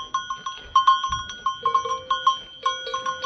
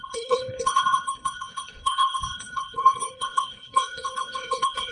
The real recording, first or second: first